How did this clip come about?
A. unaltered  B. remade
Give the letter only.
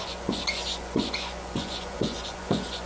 B